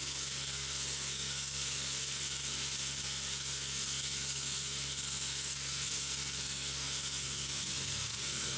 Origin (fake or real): fake